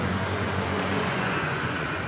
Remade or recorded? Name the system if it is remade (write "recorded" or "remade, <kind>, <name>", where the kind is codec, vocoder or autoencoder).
remade, vocoder, Vocos